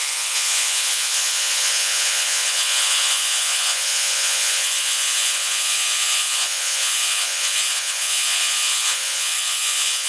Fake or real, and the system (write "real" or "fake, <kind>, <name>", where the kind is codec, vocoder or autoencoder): fake, vocoder, Vocos